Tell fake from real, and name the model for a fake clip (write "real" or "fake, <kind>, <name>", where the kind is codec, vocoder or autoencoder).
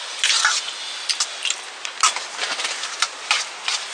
real